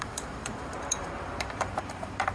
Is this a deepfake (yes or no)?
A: yes